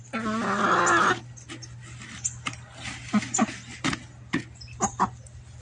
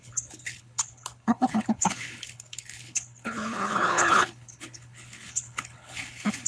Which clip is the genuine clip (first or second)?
first